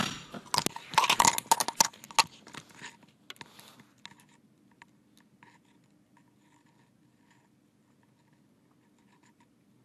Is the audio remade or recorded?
recorded